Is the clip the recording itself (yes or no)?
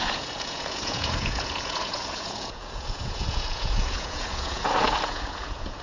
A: no